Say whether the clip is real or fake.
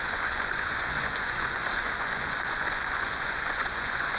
fake